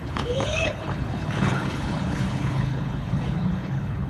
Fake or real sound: fake